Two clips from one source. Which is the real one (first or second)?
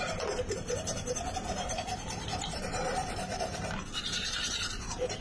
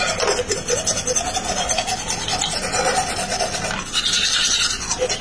second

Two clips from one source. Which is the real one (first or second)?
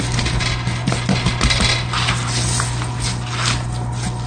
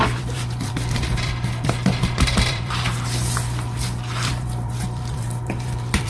first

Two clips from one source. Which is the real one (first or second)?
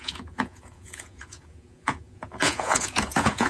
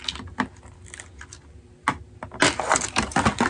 second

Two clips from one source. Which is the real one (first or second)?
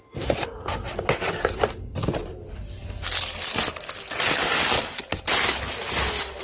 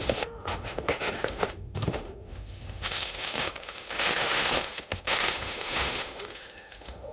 first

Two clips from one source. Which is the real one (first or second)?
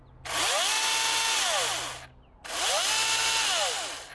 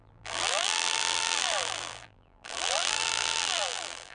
first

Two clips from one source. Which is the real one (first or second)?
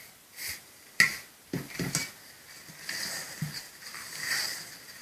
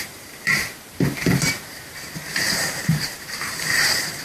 first